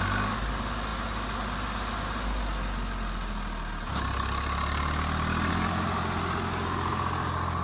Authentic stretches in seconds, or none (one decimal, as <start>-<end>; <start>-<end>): 0.0-7.6